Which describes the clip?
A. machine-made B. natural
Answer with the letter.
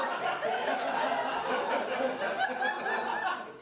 B